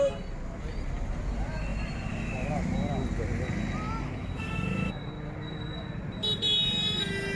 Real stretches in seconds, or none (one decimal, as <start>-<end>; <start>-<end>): 0.0-7.4